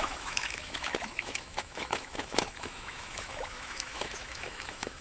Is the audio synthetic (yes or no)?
yes